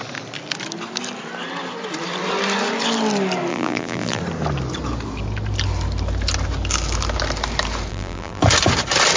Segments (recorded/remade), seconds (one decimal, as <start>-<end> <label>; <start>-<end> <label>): 0.0-3.5 recorded; 3.5-4.2 remade; 4.2-7.9 recorded; 7.9-8.4 remade; 8.4-9.2 recorded